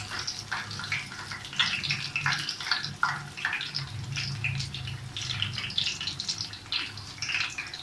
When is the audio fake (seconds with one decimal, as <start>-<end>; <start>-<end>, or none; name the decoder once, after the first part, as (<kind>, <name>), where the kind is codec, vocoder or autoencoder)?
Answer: none